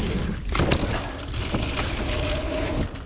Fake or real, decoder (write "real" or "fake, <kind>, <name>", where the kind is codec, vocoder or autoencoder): real